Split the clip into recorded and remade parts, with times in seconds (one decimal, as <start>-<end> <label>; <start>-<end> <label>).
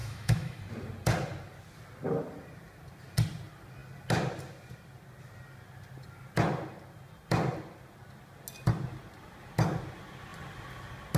0.0-0.6 remade; 0.6-11.2 recorded